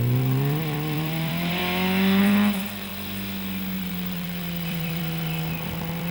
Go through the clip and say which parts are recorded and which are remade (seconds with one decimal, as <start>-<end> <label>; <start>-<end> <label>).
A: 0.0-1.6 remade; 1.6-2.2 recorded; 2.2-2.9 remade; 2.9-3.8 recorded; 3.8-6.1 remade